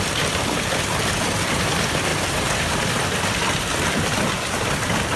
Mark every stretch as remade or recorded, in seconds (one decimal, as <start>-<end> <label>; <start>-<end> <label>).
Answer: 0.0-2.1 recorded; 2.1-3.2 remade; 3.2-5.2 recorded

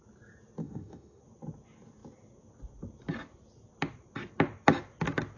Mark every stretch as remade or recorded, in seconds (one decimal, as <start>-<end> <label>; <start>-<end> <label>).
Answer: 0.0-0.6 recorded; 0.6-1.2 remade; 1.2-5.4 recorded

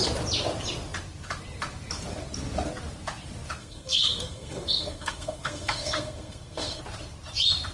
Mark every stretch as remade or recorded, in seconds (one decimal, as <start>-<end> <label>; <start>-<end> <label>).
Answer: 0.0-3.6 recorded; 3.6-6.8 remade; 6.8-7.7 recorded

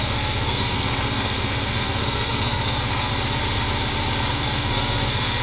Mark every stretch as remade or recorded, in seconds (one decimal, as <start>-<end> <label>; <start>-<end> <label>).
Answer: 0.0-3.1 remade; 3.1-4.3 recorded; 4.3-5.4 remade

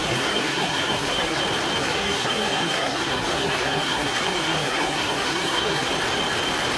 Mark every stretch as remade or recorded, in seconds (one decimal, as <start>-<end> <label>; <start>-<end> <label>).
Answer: 0.0-1.4 remade; 1.4-1.8 recorded; 1.8-5.9 remade; 5.9-6.8 recorded

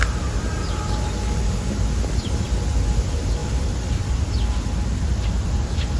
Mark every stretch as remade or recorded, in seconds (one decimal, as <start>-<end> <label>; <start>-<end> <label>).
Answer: 0.0-3.4 recorded; 3.4-4.2 remade; 4.2-6.0 recorded

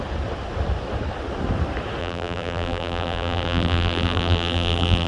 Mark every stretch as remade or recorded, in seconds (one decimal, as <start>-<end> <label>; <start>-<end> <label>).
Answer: 0.0-2.0 recorded; 2.0-5.1 remade